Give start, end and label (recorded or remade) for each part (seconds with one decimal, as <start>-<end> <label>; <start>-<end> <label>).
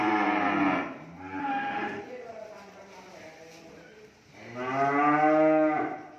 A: 0.0-1.4 recorded; 1.4-2.0 remade; 2.0-6.2 recorded